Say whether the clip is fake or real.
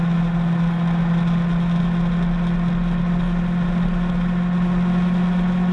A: real